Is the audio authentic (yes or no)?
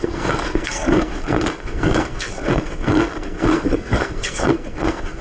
no